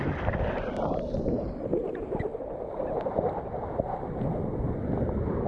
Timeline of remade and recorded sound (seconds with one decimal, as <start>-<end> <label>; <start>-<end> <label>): 0.0-2.3 recorded; 2.3-3.2 remade; 3.2-5.5 recorded